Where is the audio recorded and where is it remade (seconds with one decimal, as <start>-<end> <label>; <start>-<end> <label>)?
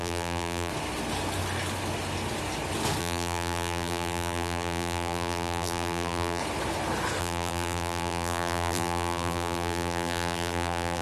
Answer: 0.0-0.7 remade; 0.7-3.0 recorded; 3.0-6.4 remade; 6.4-7.2 recorded; 7.2-11.0 remade